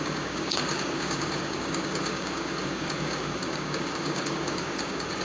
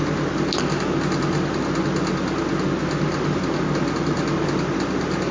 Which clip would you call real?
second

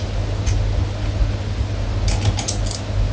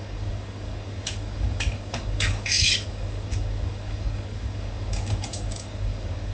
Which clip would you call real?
first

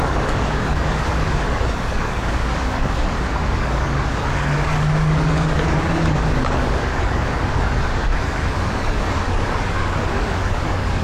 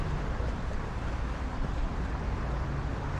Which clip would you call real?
second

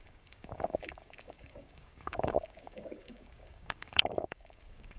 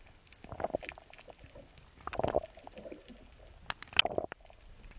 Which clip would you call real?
second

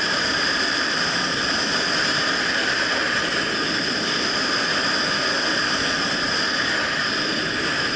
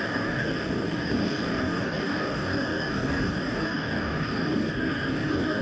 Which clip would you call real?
first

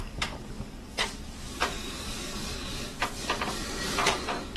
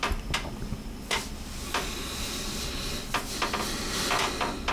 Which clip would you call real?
second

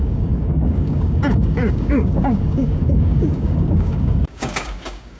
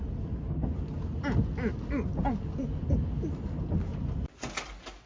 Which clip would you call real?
second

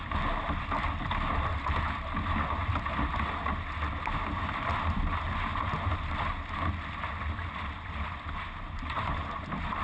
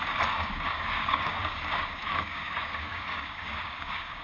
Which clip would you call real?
first